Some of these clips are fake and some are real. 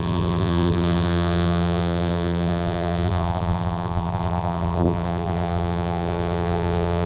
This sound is fake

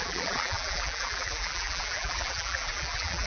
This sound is fake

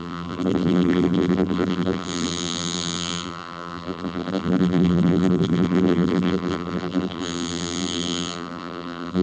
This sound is fake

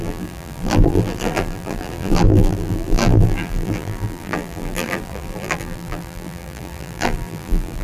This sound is fake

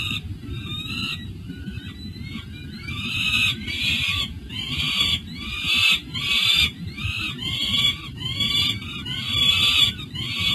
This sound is fake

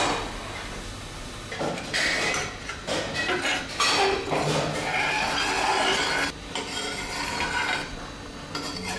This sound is real